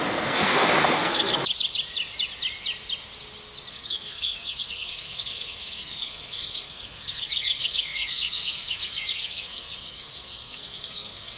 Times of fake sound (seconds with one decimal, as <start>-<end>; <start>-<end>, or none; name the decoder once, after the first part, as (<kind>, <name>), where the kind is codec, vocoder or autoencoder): 0.0-1.4 (codec, SNAC); 3.7-11.4

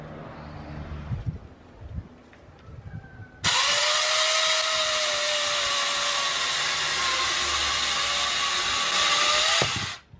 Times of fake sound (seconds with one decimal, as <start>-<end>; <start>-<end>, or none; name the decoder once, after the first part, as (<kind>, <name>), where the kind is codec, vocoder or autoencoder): none

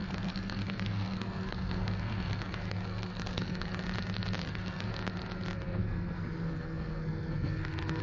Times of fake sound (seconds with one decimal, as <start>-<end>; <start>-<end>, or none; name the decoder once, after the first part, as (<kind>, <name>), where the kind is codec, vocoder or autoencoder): 0.0-3.8 (codec, SNAC); 4.4-4.9; 5.8-8.0

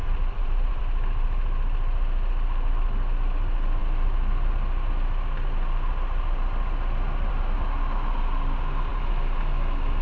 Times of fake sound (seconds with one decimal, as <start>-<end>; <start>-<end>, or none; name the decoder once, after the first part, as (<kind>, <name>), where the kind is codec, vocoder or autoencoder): 0.0-0.8 (vocoder, BigVGAN v2); 8.9-9.4

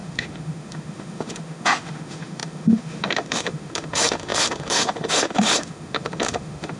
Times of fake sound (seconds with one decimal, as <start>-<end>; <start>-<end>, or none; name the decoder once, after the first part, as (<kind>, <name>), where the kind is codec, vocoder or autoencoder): 0.0-6.8 (autoencoder, DAC-VAE)